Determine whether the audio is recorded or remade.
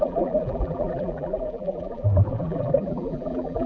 remade